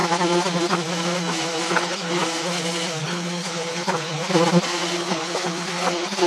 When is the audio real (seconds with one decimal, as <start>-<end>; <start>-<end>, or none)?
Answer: 0.0-1.7; 2.2-3.0; 4.2-5.0